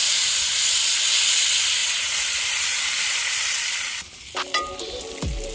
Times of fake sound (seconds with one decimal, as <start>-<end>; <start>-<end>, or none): 0.0-0.6; 1.8-3.4